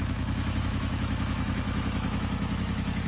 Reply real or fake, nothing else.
fake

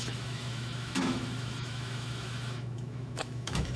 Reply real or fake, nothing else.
fake